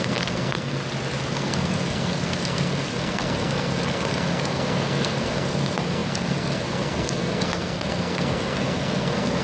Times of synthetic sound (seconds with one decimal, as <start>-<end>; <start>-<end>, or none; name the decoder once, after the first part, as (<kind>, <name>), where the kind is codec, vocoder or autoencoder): 0.0-0.8 (codec, SNAC); 1.3-9.4